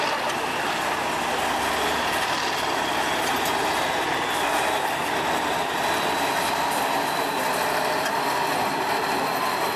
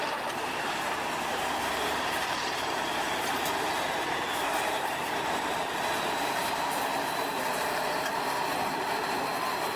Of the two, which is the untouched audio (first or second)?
first